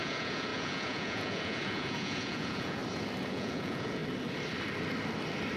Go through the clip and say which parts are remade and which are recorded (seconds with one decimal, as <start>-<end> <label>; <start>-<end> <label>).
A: 0.0-2.8 remade; 2.8-3.3 recorded; 3.3-4.0 remade; 4.0-5.6 recorded